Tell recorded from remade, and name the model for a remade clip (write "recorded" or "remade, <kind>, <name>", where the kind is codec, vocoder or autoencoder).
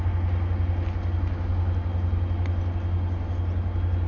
recorded